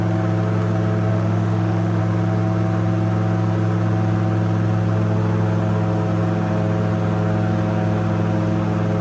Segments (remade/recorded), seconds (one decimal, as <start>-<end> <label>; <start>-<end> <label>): 0.0-1.1 recorded; 1.1-2.0 remade; 2.0-9.0 recorded